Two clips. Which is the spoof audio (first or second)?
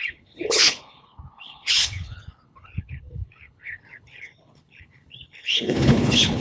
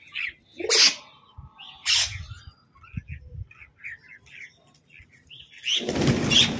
first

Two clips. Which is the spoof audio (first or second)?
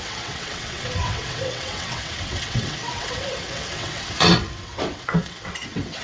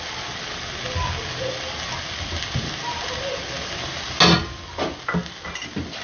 first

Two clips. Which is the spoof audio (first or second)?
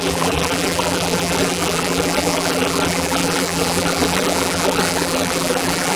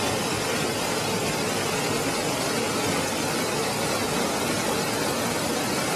first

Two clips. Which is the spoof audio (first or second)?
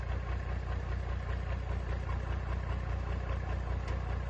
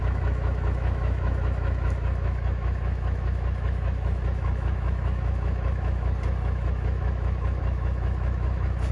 second